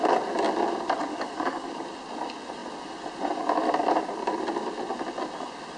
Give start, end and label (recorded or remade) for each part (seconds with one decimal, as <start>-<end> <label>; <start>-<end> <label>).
0.0-1.1 recorded; 1.1-1.7 remade; 1.7-5.8 recorded